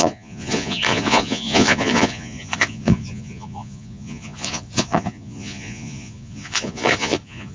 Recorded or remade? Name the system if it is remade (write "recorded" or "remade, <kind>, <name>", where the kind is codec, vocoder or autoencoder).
remade, vocoder, Vocos